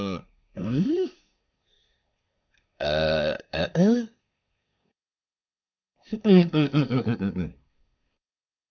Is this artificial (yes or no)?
yes